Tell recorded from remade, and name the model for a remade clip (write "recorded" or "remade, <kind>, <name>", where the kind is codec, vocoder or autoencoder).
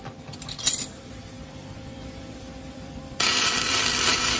remade, vocoder, BigVGAN v2